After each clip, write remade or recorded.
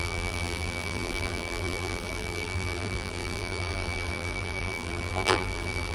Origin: remade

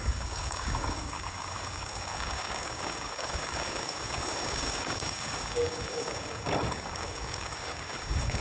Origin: remade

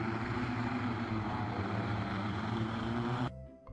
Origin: remade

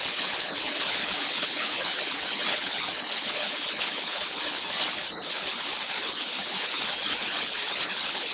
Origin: remade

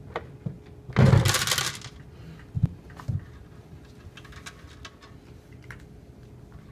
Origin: recorded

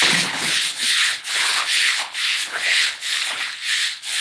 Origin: remade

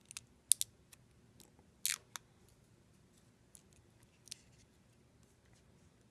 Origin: recorded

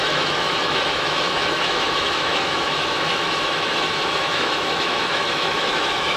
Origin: remade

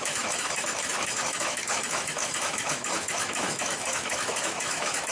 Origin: remade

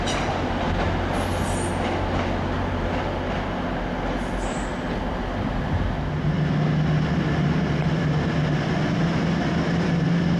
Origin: recorded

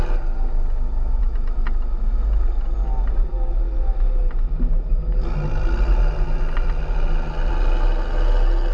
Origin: recorded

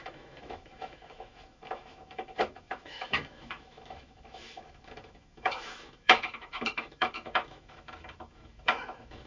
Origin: remade